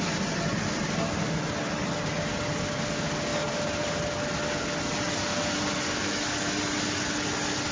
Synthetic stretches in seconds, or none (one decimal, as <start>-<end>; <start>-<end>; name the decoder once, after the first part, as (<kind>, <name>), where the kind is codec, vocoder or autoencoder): none